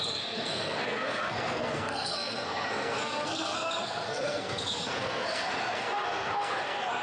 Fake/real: fake